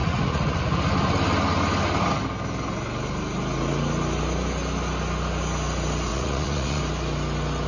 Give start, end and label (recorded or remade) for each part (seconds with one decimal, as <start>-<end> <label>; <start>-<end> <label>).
0.0-0.6 remade; 0.6-6.1 recorded; 6.1-6.8 remade; 6.8-7.7 recorded